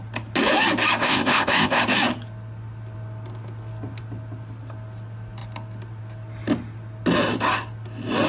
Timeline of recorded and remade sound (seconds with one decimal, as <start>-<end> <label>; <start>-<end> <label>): 0.0-1.0 recorded; 1.0-1.8 remade; 1.8-8.3 recorded